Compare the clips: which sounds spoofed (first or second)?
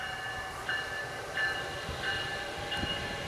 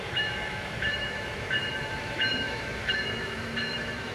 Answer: second